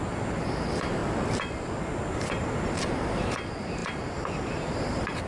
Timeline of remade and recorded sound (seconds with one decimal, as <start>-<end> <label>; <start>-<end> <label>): 0.0-1.0 remade; 1.0-2.1 recorded; 2.1-5.3 remade